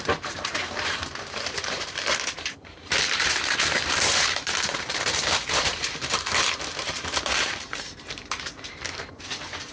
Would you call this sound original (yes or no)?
no